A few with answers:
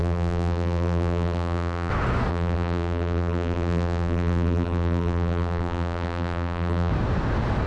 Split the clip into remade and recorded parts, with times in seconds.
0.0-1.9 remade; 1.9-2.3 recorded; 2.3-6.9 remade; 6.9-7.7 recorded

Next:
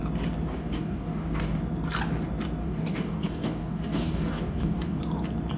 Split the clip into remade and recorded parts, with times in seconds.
0.0-0.5 recorded; 0.5-1.6 remade; 1.6-2.6 recorded; 2.6-5.0 remade; 5.0-5.6 recorded

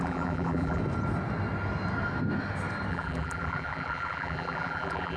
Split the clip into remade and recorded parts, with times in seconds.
0.0-0.8 remade; 0.8-2.9 recorded; 2.9-5.2 remade

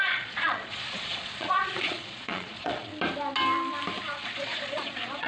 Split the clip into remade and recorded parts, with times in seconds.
0.0-2.9 remade; 2.9-4.0 recorded; 4.0-5.3 remade